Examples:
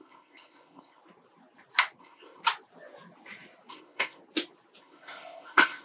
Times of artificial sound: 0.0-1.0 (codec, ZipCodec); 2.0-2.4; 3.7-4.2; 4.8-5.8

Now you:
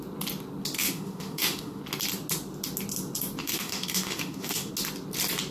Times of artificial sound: 0.8-1.8 (autoencoder, DAC-VAE); 3.4-4.7

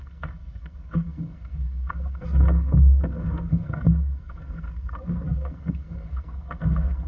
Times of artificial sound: 0.0-7.1 (codec, SNAC)

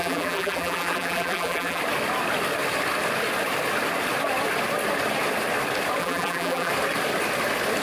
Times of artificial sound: 0.0-1.8 (vocoder, BigVGAN v2); 6.0-6.7

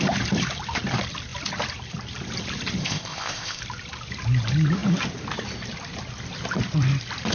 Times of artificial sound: 2.8-3.6 (codec, ZipCodec)

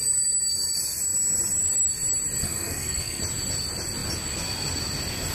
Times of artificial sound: 2.4-3.2 (codec, SNAC)

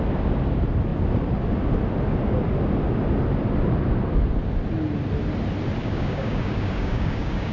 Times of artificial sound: 5.8-7.5 (codec, DAC)

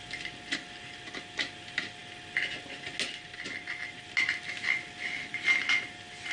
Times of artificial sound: none